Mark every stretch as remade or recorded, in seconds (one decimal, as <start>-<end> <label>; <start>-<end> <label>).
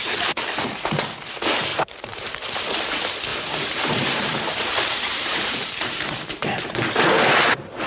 0.0-1.7 recorded; 1.7-2.5 remade; 2.5-3.3 recorded; 3.3-6.7 remade; 6.7-7.9 recorded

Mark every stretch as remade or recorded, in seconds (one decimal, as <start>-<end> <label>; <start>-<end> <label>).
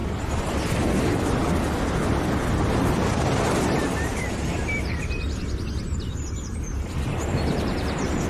0.0-3.1 recorded; 3.1-8.3 remade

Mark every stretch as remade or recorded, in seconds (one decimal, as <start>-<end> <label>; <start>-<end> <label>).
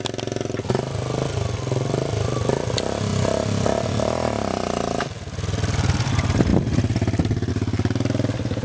0.0-3.1 recorded; 3.1-6.1 remade; 6.1-8.6 recorded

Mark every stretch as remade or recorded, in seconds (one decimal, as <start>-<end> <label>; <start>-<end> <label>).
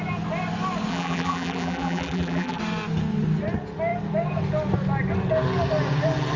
0.0-0.9 recorded; 0.9-2.6 remade; 2.6-6.4 recorded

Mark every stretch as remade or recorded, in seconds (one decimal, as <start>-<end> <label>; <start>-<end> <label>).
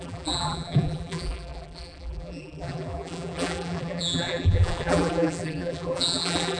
0.0-6.6 remade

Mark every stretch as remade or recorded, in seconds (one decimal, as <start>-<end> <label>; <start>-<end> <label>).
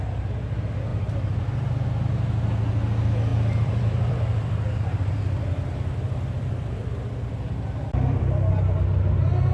0.0-3.3 recorded; 3.3-8.5 remade; 8.5-9.5 recorded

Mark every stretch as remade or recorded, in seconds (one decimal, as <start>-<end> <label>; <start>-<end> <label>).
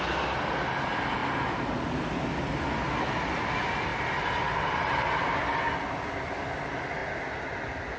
0.0-8.0 recorded